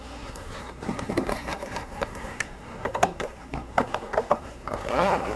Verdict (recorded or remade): remade